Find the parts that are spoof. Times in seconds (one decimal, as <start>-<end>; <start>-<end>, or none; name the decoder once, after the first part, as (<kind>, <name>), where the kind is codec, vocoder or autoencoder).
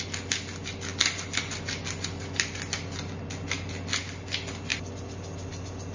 none